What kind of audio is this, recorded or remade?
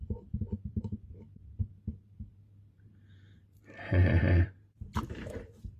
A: remade